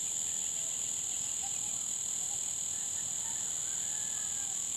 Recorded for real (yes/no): yes